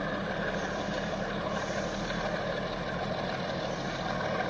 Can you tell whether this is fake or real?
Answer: real